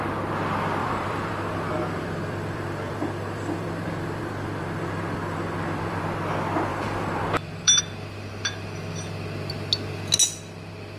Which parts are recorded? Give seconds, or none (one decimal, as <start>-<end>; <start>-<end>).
0.0-0.8; 6.0-6.7; 7.8-11.0